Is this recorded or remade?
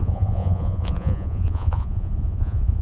remade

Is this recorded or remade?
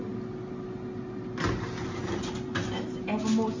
recorded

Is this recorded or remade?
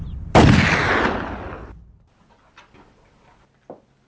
recorded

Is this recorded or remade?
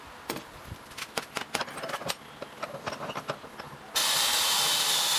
recorded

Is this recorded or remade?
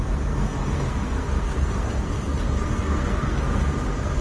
remade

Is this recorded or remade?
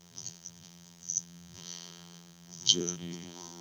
remade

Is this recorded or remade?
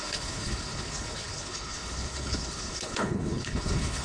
remade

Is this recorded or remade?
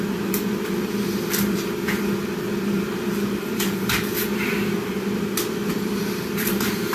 remade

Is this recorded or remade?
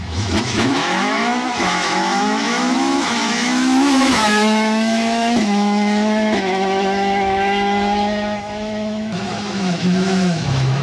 remade